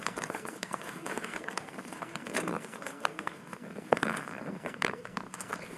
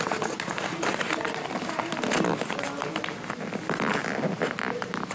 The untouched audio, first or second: second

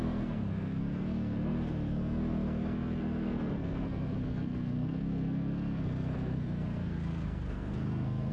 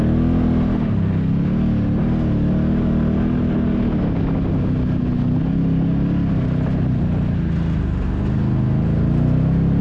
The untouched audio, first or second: second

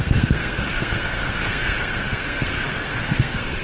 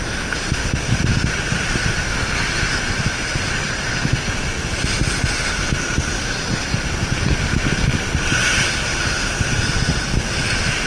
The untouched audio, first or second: second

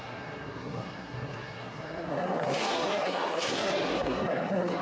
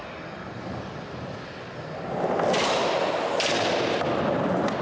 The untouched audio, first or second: second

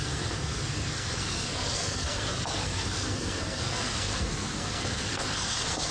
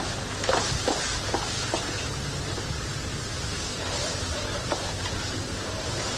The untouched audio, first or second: second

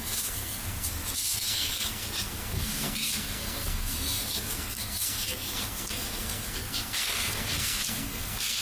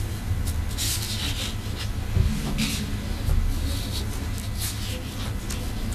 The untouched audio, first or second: second